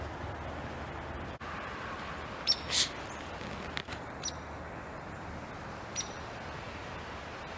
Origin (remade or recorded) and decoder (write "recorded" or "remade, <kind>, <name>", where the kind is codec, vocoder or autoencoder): recorded